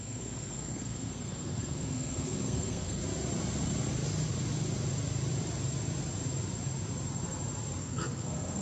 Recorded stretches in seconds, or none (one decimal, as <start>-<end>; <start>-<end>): 3.0-7.8